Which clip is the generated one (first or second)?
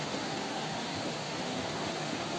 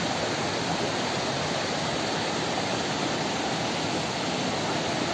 first